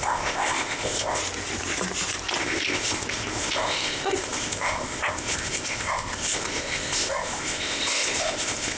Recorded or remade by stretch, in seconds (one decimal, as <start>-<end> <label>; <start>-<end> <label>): 0.0-1.2 remade; 1.2-2.4 recorded; 2.4-8.8 remade